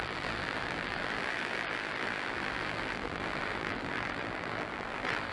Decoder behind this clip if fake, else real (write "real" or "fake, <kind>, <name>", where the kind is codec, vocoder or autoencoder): fake, vocoder, BigVGAN v2